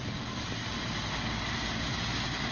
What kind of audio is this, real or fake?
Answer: real